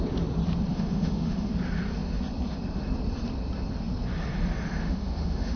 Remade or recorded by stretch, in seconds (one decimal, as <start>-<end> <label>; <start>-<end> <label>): 0.0-0.7 recorded; 0.7-1.5 remade; 1.5-4.8 recorded; 4.8-5.6 remade